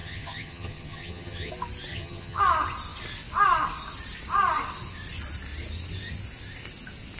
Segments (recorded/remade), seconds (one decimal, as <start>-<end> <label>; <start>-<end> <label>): 0.0-1.5 remade; 1.5-1.9 recorded; 1.9-2.4 remade; 2.4-7.2 recorded

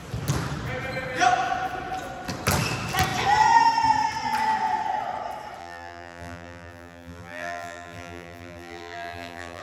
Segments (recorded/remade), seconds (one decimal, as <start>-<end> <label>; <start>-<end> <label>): 0.0-5.6 recorded; 5.6-9.6 remade

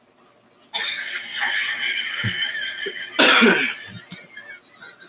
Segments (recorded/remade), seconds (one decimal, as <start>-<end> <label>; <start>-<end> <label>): 0.0-5.1 recorded

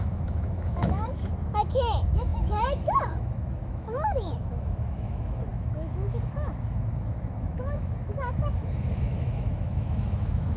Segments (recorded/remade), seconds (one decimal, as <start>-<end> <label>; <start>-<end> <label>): 0.0-10.6 remade

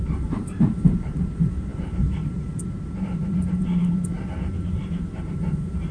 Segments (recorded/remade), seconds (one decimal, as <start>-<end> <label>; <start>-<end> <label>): 0.0-5.9 remade

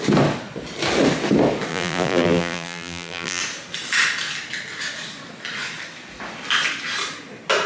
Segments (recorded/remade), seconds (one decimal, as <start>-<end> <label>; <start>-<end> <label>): 0.0-1.7 recorded; 1.7-3.4 remade; 3.4-7.7 recorded

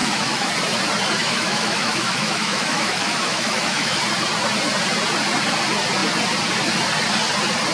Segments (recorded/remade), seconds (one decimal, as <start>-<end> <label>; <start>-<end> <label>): 0.0-0.5 remade; 0.5-1.2 recorded; 1.2-4.0 remade; 4.0-7.7 recorded

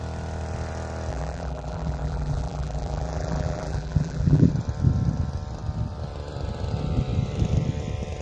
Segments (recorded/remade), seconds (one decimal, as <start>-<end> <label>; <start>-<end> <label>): 0.0-1.1 recorded; 1.1-4.5 remade; 4.5-8.2 recorded